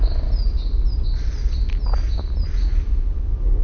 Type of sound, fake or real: real